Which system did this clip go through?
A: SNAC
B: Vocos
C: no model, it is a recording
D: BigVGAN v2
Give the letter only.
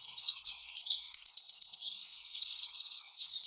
A